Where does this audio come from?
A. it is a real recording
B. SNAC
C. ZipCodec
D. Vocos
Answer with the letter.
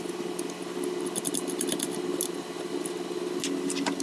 A